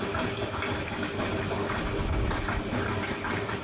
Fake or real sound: real